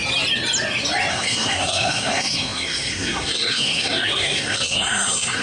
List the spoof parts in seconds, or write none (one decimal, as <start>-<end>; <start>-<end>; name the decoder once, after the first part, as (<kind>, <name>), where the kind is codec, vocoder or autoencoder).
1.1-5.4 (codec, SNAC)